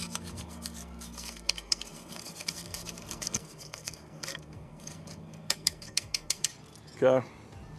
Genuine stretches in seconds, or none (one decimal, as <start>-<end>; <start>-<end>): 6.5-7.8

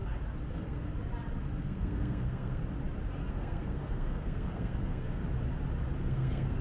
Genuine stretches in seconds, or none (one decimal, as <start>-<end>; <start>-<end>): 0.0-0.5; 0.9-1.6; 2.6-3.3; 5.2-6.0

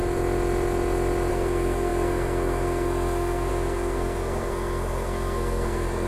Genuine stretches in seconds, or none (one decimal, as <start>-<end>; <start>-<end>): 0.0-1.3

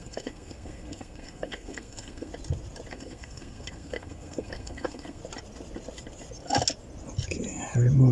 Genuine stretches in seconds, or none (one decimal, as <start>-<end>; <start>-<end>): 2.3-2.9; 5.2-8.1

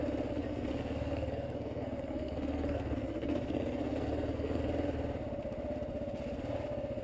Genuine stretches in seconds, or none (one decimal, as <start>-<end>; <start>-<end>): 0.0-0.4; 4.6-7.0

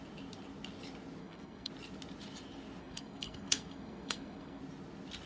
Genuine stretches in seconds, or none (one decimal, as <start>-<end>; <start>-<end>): 0.0-1.2; 1.7-2.8; 4.6-5.3

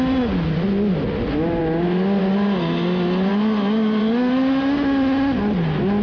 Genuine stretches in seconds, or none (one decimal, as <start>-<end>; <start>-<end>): 0.0-6.0